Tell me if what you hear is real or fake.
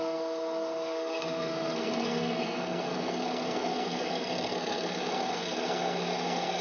fake